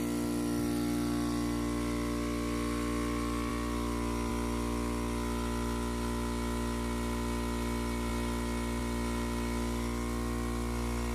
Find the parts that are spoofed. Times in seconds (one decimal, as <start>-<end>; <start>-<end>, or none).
none